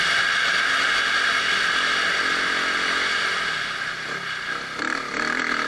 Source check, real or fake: real